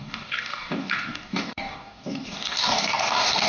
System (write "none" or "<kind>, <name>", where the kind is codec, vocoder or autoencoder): codec, DAC